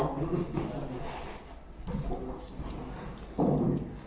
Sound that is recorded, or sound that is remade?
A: recorded